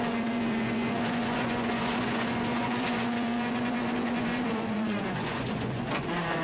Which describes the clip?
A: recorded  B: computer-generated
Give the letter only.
B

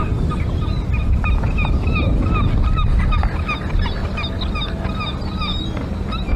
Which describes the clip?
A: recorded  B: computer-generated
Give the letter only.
A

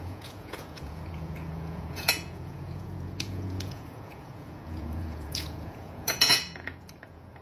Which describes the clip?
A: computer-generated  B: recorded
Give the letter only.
A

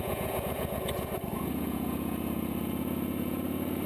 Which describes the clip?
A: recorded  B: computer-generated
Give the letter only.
B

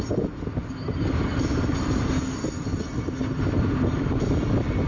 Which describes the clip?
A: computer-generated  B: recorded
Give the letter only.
B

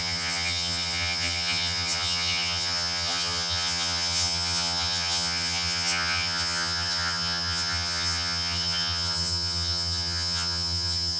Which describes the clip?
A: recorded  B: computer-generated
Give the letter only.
B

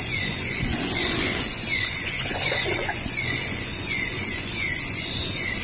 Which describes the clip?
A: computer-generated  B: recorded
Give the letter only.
A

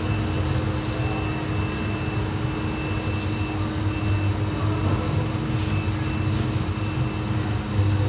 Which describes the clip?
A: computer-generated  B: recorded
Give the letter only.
B